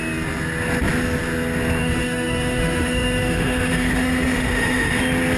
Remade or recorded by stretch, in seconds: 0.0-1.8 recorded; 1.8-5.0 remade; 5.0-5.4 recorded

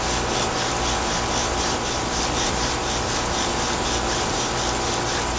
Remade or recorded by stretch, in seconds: 0.0-1.4 recorded; 1.4-4.6 remade; 4.6-5.4 recorded

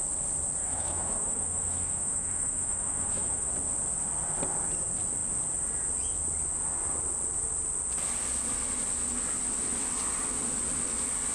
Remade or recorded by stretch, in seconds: 0.0-0.6 recorded; 0.6-3.5 remade; 3.5-11.3 recorded

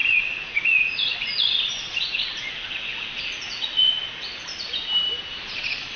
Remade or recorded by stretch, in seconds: 0.0-4.5 remade; 4.5-5.3 recorded; 5.3-6.0 remade

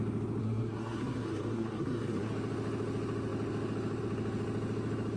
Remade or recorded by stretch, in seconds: 0.0-0.4 recorded; 0.4-2.3 remade; 2.3-5.2 recorded